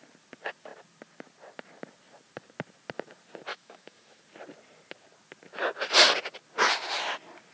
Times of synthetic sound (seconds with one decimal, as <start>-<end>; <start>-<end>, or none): 3.5-4.2